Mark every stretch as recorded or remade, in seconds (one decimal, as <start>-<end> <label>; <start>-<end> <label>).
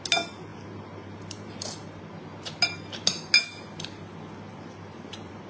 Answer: 0.0-0.5 recorded; 0.5-2.0 remade; 2.0-4.5 recorded; 4.5-5.5 remade